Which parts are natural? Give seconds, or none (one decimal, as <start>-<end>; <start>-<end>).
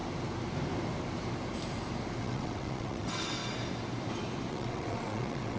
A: 0.0-2.2; 3.4-4.5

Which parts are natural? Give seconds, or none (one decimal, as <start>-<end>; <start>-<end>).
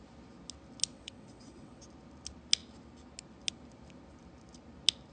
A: 0.0-0.9; 1.8-5.1